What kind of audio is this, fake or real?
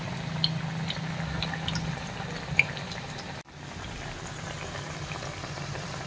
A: real